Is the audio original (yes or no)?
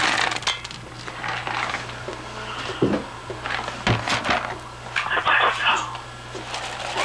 yes